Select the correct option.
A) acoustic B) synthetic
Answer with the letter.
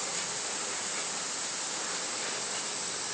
A